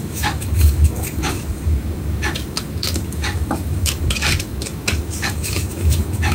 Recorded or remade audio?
remade